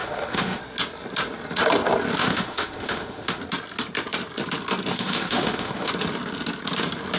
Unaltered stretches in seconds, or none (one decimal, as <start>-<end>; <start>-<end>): 0.6-2.2; 3.4-4.9; 5.9-7.2